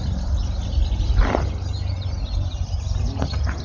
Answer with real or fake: real